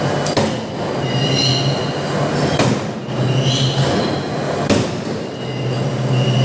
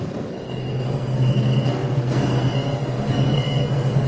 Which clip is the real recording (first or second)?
first